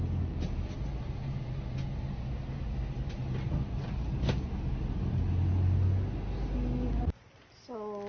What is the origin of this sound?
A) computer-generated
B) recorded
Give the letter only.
B